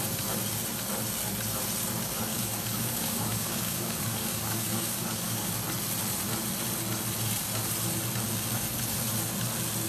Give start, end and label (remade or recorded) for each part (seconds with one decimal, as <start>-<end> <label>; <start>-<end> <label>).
0.0-2.3 recorded; 2.3-5.5 remade; 5.5-9.9 recorded